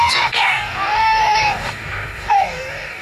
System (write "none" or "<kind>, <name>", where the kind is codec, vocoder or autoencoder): codec, DAC